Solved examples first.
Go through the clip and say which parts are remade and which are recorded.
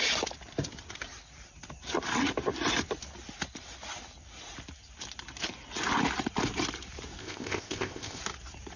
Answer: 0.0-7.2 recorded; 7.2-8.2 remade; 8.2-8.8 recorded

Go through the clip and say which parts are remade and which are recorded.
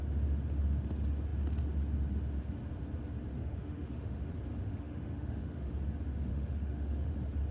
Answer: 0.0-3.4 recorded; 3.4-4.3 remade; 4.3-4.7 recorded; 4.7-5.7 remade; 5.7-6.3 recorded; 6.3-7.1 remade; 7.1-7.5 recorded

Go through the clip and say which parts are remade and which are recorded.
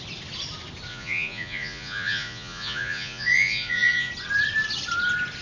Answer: 0.0-0.9 recorded; 0.9-4.1 remade; 4.1-5.4 recorded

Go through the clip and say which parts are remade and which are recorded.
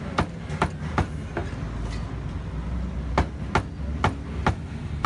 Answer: 0.0-5.1 recorded